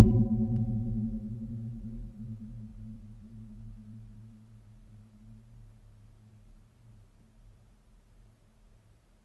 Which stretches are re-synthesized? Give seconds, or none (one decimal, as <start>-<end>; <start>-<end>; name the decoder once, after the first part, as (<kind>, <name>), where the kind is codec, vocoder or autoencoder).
0.0-9.2 (vocoder, BigVGAN v2)